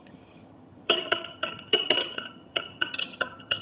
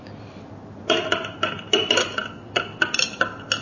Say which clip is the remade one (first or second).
first